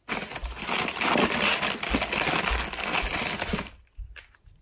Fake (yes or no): no